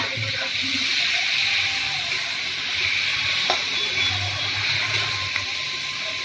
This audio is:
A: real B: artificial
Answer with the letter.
A